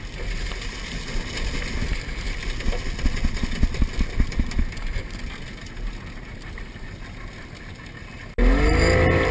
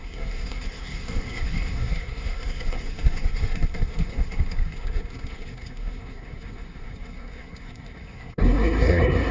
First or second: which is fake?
second